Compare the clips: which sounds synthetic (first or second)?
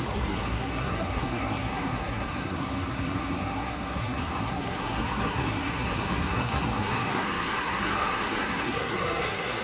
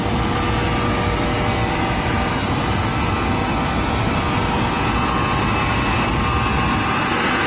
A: first